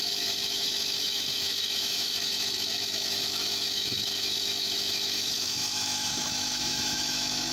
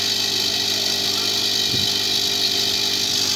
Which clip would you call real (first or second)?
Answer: second